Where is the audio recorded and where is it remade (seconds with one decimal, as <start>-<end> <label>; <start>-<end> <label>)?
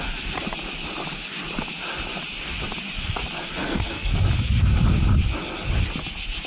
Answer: 0.0-3.6 recorded; 3.6-4.2 remade; 4.2-6.5 recorded